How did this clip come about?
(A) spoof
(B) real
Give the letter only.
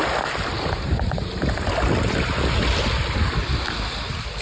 B